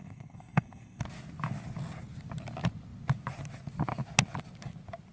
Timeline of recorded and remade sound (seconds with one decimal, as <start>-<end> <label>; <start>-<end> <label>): 0.0-1.0 remade; 1.0-5.1 recorded